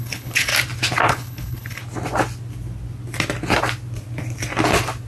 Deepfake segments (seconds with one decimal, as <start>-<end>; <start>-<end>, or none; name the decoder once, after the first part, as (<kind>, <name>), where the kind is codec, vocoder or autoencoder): 0.0-0.5 (codec, HILCodec); 1.1-1.8